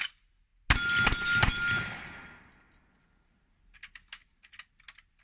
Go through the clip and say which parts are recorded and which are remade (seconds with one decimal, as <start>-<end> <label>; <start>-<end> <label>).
0.0-5.2 recorded